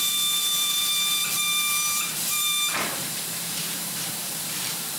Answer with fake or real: fake